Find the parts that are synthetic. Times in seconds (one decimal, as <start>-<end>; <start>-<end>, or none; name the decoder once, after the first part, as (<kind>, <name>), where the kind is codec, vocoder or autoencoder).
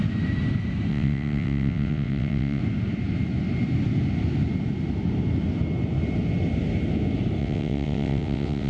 0.9-2.6 (vocoder, WaveNeXt); 7.4-8.7